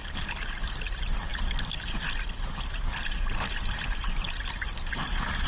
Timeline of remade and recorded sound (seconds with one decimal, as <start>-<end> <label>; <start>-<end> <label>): 0.0-5.5 recorded